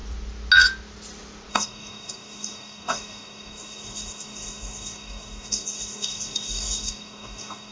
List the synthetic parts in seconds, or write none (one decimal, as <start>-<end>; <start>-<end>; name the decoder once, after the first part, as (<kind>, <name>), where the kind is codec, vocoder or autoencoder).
1.5-7.7 (codec, DAC)